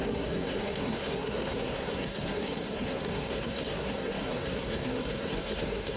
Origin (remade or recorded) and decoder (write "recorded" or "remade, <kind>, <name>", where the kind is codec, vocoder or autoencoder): remade, codec, SNAC